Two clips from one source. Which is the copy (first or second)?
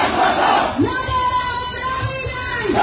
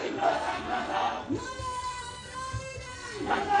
second